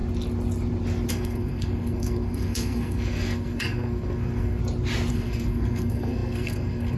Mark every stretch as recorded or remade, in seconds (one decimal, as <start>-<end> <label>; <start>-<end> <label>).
0.0-1.1 recorded; 1.1-4.6 remade; 4.6-5.1 recorded; 5.1-7.0 remade

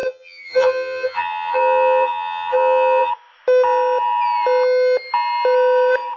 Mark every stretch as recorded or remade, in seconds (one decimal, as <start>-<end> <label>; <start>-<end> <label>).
0.0-3.1 remade; 3.1-6.2 recorded

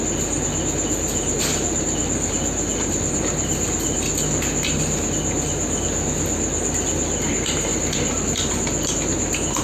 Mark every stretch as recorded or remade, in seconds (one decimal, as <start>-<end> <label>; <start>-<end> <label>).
0.0-1.5 recorded; 1.5-3.1 remade; 3.1-7.7 recorded; 7.7-8.5 remade; 8.5-9.6 recorded

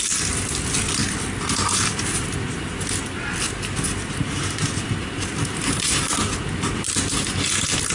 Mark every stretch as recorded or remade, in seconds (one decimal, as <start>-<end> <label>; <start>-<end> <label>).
0.0-7.9 recorded

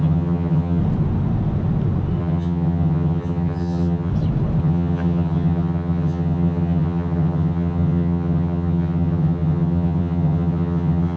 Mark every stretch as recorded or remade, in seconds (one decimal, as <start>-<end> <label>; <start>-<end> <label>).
0.0-0.8 remade; 0.8-2.2 recorded; 2.2-4.1 remade; 4.1-4.6 recorded; 4.6-11.2 remade

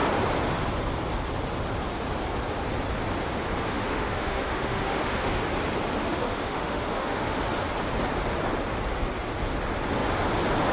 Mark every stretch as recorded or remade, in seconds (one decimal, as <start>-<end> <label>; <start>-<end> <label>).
0.0-3.7 recorded; 3.7-5.4 remade; 5.4-6.0 recorded; 6.0-7.4 remade; 7.4-10.7 recorded

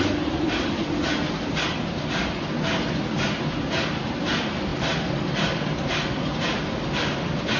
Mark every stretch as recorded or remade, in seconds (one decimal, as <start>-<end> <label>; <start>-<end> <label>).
0.0-7.6 recorded